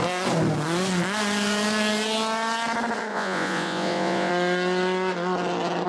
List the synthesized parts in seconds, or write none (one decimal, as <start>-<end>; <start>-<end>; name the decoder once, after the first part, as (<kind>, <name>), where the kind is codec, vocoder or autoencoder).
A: 3.1-4.3 (vocoder, Vocos)